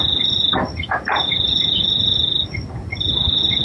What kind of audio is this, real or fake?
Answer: real